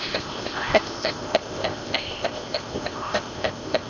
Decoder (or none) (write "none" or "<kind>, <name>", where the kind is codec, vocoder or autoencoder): codec, ZipCodec